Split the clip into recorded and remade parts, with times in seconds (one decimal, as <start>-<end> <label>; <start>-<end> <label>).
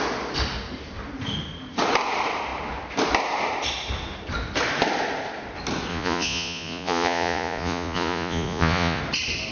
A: 0.0-5.9 recorded; 5.9-9.0 remade; 9.0-9.5 recorded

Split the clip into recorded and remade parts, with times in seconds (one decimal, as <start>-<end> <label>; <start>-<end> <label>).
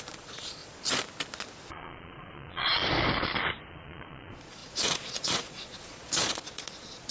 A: 0.0-0.6 remade; 0.6-1.7 recorded; 1.7-2.8 remade; 2.8-3.7 recorded; 3.7-7.1 remade